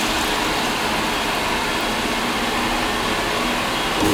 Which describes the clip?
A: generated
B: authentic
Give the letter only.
B